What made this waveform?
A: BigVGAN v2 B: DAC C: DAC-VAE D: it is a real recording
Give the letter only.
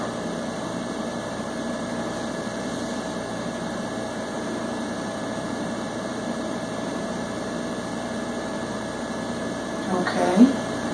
A